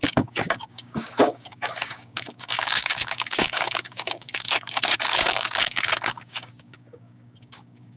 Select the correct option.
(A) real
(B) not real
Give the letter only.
B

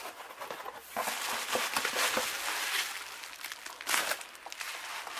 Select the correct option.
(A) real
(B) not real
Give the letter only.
A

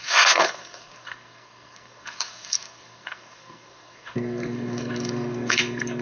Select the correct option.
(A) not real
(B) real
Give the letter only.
A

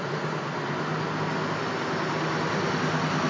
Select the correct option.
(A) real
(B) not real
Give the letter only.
A